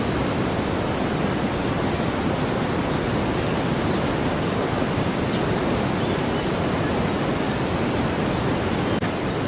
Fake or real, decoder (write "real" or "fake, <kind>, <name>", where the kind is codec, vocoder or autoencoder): real